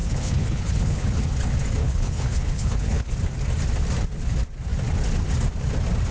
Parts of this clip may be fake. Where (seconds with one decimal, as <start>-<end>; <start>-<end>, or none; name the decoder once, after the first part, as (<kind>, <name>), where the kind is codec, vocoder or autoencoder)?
0.0-1.1 (codec, HILCodec); 1.8-3.1